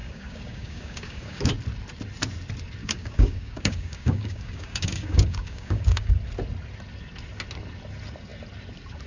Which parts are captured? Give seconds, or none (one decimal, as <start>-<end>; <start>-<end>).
1.5-2.8; 6.1-9.1